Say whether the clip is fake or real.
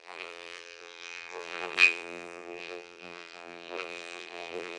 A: fake